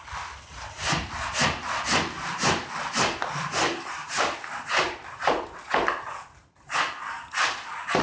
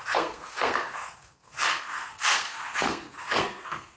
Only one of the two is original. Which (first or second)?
first